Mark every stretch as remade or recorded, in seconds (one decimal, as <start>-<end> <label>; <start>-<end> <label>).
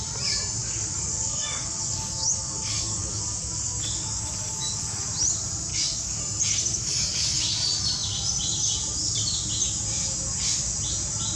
0.0-0.6 recorded; 0.6-5.1 remade; 5.1-5.7 recorded; 5.7-6.2 remade; 6.2-6.7 recorded; 6.7-7.4 remade; 7.4-11.4 recorded